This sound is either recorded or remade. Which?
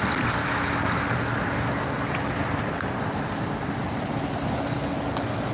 recorded